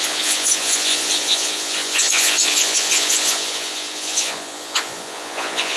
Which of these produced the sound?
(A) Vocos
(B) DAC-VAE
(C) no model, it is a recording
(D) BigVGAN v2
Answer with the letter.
A